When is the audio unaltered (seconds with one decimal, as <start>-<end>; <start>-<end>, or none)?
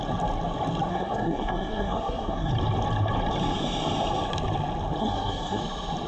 0.0-0.9; 2.5-5.0; 5.6-6.1